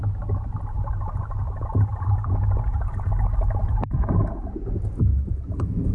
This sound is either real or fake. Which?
real